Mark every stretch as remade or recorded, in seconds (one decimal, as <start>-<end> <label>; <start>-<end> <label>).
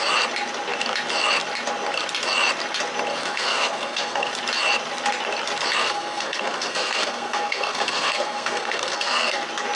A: 0.0-3.1 recorded; 3.1-4.3 remade; 4.3-5.8 recorded; 5.8-9.4 remade; 9.4-9.8 recorded